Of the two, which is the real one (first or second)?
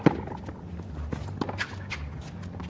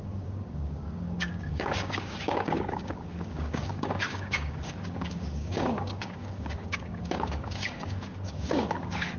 first